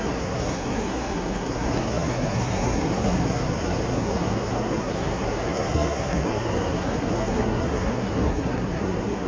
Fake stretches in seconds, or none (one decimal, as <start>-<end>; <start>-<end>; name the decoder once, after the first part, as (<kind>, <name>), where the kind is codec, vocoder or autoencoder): 0.0-9.3 (codec, SNAC)